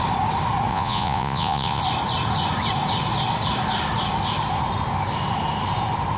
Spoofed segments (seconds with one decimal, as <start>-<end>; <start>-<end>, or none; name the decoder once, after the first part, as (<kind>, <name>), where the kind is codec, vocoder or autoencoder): 0.7-1.8 (vocoder, Vocos)